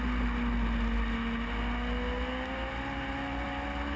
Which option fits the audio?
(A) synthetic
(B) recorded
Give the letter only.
B